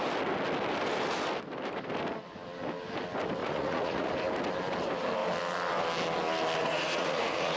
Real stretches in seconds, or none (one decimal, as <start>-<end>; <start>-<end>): 0.0-3.4; 4.1-6.6